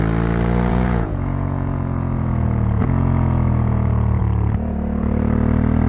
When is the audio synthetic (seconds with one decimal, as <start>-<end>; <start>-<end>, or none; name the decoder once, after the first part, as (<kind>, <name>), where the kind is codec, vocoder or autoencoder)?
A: 0.7-4.2 (vocoder, Vocos)